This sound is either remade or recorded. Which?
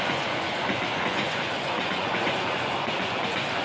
remade